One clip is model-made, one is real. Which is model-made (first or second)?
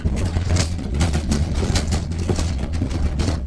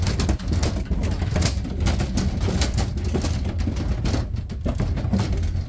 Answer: first